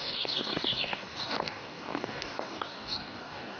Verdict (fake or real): fake